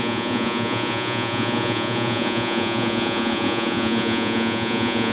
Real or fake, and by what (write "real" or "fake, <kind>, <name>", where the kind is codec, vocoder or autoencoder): fake, vocoder, Vocos